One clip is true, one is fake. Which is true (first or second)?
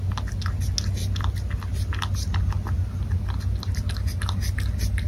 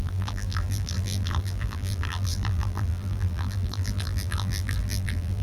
first